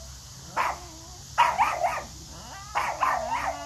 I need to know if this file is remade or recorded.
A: recorded